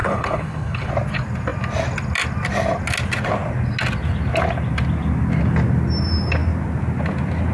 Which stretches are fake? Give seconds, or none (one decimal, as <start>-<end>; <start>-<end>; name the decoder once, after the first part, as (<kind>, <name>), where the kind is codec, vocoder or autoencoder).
0.0-0.9 (codec, HILCodec)